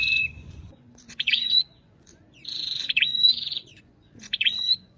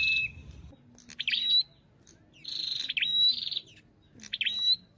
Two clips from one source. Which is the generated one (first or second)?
first